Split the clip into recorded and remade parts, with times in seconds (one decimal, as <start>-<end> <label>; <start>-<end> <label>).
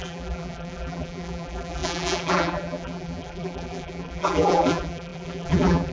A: 0.0-5.9 remade